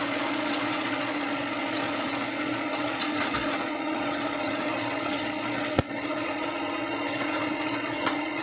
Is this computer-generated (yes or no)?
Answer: yes